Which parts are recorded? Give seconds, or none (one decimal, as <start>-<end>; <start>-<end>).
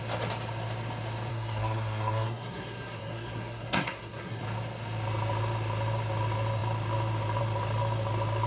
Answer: 0.0-1.3; 4.4-8.5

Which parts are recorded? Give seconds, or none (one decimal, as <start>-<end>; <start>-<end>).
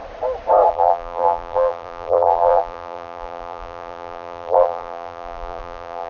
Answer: 0.0-0.7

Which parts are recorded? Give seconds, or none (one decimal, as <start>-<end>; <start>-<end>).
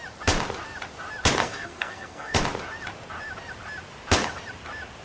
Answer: 0.0-1.4; 2.4-5.0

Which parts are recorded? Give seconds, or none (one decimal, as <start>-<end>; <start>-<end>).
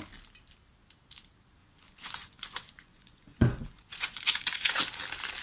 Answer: 0.0-1.6; 4.8-5.4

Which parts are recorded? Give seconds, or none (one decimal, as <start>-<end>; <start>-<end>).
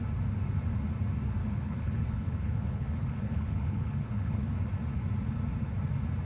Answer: 0.0-1.4; 4.5-6.3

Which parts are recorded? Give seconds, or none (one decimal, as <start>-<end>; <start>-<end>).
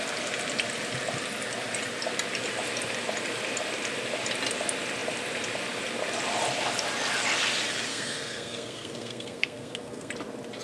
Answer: 0.0-7.9; 10.1-10.6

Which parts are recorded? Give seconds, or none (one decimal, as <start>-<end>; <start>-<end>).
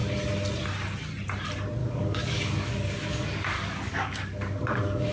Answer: 0.0-1.8